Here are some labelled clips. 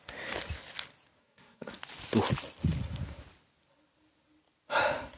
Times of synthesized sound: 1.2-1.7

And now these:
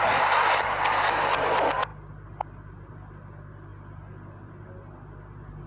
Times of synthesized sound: none

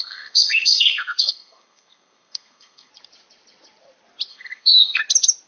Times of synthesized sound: 0.0-2.9; 4.3-5.0

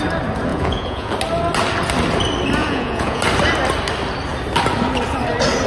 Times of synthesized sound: 0.5-1.1; 2.6-3.2

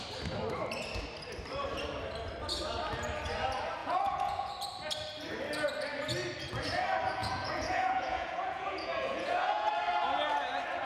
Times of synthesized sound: 3.8-4.5; 7.2-9.7

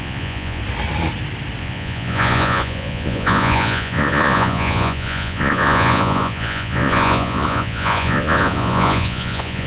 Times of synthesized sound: 0.0-0.6; 1.6-9.7

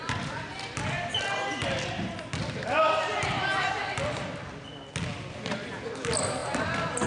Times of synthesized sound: 3.1-3.7